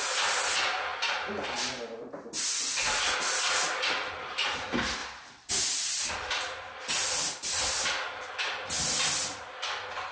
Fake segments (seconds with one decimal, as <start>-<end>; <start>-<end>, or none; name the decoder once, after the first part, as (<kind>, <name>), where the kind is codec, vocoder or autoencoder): none